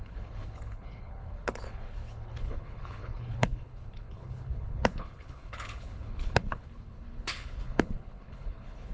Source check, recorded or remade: remade